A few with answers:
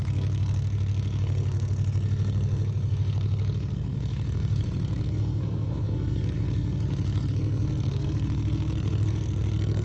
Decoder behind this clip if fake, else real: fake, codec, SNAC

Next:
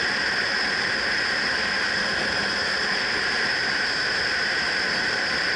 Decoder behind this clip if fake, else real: fake, vocoder, BigVGAN v2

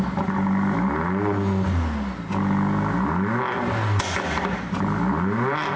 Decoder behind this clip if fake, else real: real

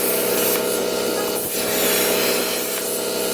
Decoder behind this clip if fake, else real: real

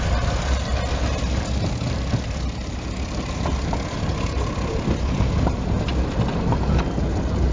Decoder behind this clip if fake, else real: real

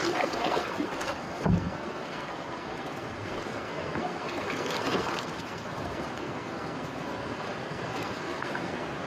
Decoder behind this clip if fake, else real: fake, codec, SNAC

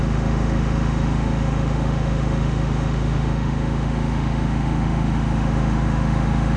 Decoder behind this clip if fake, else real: fake, autoencoder, DAC-VAE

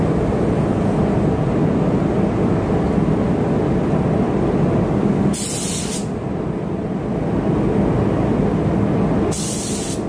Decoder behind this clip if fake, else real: real